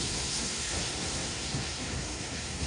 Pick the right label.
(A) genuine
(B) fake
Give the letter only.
B